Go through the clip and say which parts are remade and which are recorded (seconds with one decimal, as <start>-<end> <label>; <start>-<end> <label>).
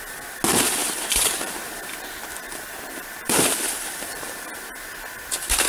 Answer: 0.0-0.8 recorded; 0.8-4.2 remade; 4.2-5.7 recorded